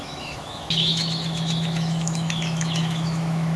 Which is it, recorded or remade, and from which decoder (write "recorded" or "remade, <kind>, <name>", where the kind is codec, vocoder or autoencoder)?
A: remade, autoencoder, DAC-VAE